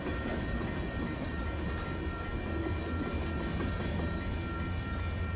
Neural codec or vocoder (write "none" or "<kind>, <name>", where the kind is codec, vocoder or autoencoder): none